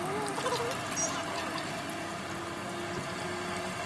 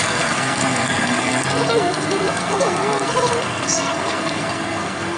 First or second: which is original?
first